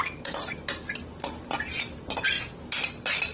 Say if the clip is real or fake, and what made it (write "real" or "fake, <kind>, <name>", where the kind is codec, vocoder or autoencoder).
real